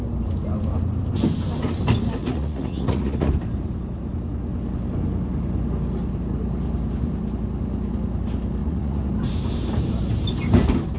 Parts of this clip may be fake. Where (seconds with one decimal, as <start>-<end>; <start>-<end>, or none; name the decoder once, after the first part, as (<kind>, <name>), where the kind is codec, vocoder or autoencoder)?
2.2-3.3 (vocoder, Vocos); 8.6-9.1